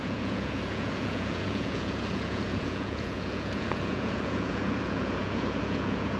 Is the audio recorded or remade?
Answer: remade